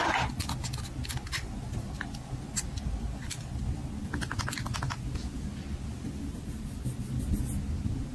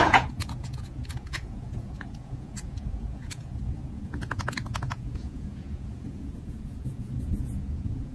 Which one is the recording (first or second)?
first